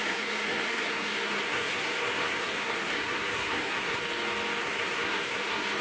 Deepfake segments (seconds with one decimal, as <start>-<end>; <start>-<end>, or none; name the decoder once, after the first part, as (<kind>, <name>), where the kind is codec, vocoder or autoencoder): 0.0-4.0 (codec, SNAC); 4.6-5.8

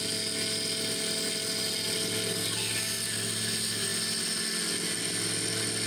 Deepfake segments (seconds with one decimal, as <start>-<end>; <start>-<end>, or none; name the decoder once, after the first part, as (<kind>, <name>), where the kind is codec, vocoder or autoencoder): none